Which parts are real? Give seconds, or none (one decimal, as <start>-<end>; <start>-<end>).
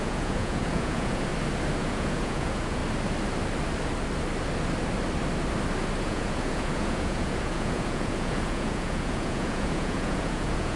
1.3-1.8; 2.8-6.0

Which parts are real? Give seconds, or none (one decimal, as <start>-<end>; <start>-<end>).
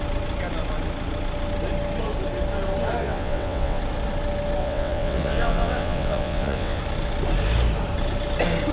0.0-3.0; 3.8-4.6; 6.8-8.7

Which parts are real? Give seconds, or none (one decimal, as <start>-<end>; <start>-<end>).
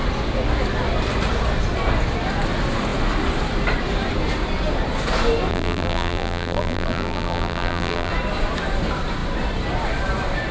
0.0-5.5; 8.1-10.5